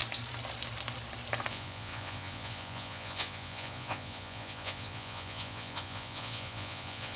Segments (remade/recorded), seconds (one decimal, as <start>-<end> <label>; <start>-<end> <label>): 0.0-1.5 recorded; 1.5-7.2 remade